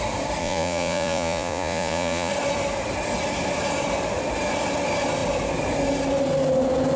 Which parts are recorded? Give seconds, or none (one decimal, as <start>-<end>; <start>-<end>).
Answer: 0.0-0.4; 2.3-7.0